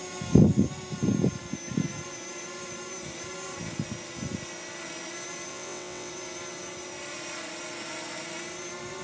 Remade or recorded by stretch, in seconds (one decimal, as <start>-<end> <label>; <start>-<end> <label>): 0.0-5.5 recorded; 5.5-6.1 remade; 6.1-9.0 recorded

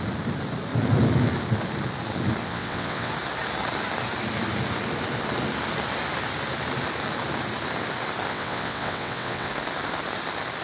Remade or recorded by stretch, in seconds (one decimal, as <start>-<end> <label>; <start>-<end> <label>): 0.0-2.4 recorded; 2.4-3.1 remade; 3.1-8.3 recorded; 8.3-9.5 remade; 9.5-10.6 recorded

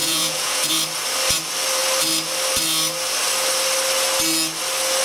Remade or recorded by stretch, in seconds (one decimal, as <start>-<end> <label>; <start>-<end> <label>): 0.0-0.7 remade; 0.7-5.0 recorded